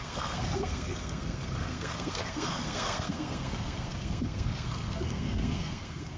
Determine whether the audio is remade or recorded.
remade